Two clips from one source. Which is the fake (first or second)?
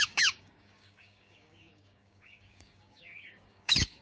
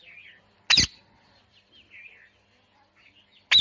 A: first